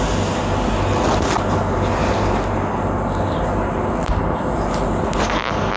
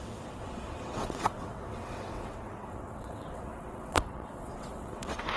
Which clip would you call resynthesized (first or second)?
second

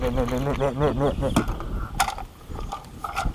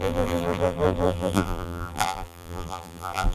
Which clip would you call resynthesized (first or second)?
second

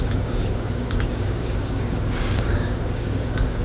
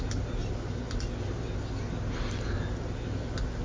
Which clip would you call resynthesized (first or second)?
first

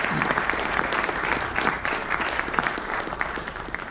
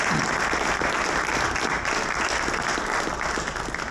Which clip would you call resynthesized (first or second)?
first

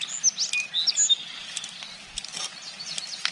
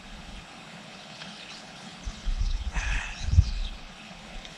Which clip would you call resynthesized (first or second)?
second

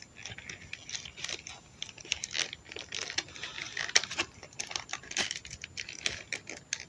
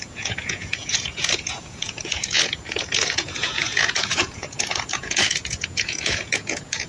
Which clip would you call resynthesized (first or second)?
second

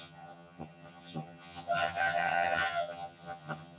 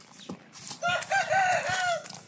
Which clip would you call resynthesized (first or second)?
first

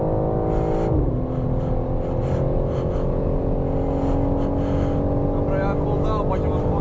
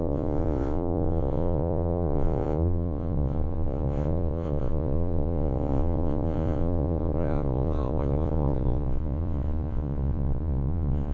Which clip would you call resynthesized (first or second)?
second